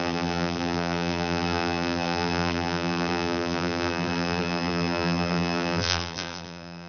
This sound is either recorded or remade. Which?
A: remade